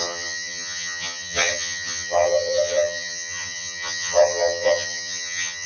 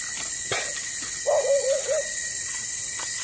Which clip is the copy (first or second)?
first